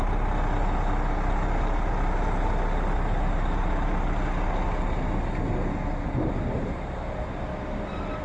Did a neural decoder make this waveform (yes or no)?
no